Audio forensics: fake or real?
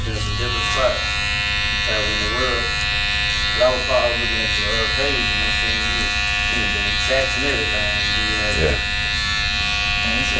real